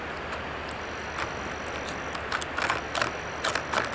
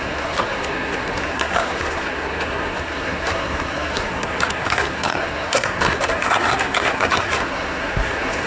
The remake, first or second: second